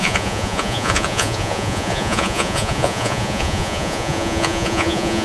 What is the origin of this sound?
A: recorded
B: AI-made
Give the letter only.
B